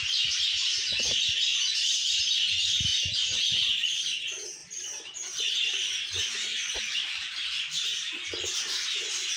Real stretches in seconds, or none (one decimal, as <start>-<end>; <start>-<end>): 0.0-2.9; 3.4-4.6; 9.0-9.4